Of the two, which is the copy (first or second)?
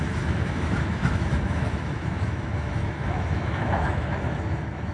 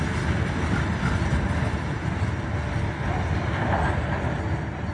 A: first